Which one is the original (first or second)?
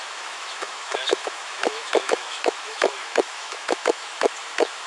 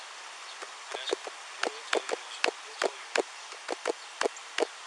second